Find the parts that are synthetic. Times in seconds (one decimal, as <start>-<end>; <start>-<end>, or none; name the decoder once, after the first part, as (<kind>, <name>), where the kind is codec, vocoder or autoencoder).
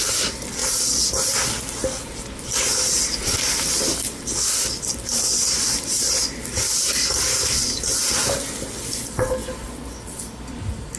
none